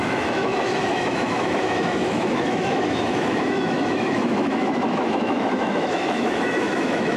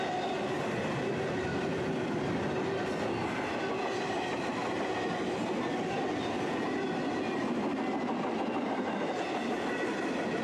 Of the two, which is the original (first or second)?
second